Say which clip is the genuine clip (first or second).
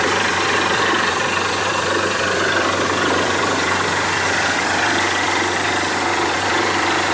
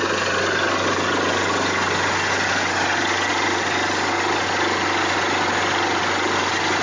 second